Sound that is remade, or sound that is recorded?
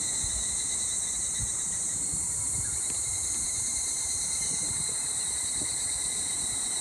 remade